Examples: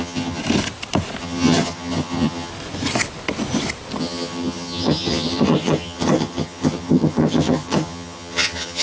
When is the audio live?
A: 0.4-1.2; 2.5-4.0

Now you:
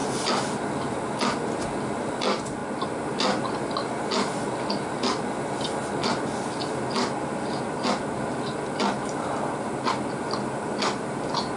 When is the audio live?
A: 0.0-11.6

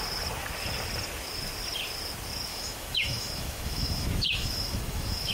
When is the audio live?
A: 0.0-2.5

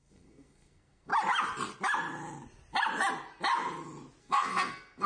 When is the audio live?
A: 1.1-4.2

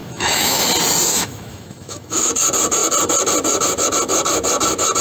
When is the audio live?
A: 0.6-1.1; 2.3-5.0

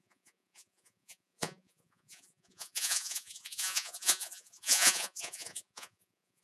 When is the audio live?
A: none

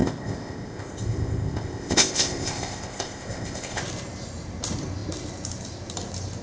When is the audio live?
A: 3.8-6.4